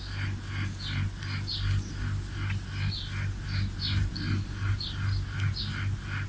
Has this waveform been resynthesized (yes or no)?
no